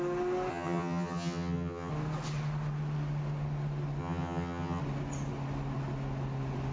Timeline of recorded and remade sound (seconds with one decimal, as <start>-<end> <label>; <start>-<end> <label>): 0.0-0.5 recorded; 0.5-1.9 remade; 1.9-4.0 recorded; 4.0-4.8 remade; 4.8-6.7 recorded